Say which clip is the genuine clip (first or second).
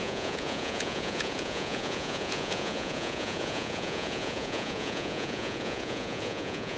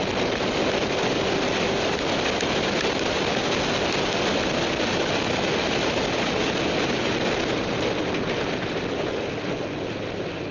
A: second